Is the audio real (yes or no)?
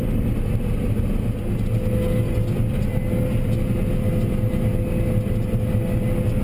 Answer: yes